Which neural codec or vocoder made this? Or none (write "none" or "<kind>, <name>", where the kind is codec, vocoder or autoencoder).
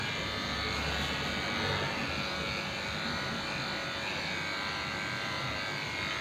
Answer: none